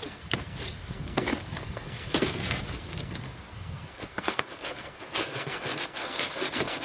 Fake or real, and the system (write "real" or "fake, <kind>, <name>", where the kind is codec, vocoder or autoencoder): fake, codec, SNAC